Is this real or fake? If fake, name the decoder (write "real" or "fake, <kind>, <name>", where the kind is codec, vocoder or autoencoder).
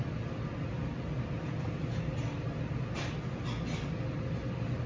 real